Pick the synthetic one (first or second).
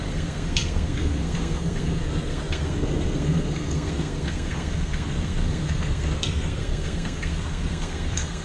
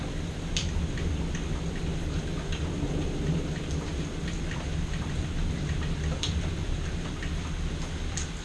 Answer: first